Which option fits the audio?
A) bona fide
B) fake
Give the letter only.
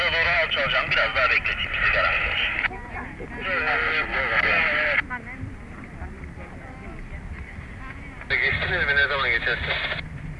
A